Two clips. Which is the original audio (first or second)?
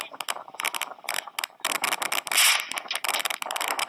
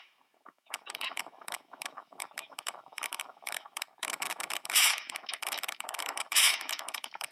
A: first